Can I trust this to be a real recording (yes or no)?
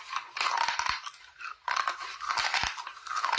yes